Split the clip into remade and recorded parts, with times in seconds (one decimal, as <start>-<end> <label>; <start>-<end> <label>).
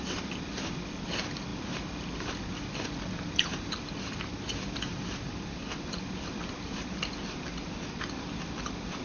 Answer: 0.0-1.5 recorded; 1.5-3.0 remade; 3.0-9.0 recorded